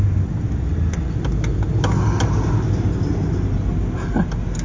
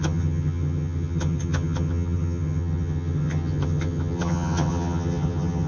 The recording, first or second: first